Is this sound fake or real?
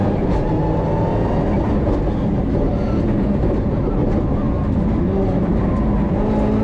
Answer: real